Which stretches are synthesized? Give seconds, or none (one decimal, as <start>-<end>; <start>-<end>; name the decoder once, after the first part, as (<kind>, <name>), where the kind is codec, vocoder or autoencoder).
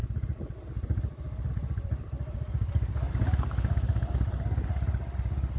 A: none